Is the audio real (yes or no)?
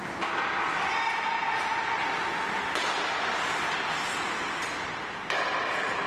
yes